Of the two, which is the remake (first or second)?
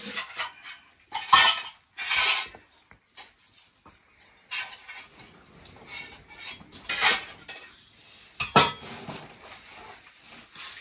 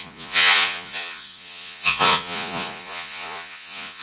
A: second